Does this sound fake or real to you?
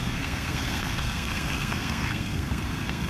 fake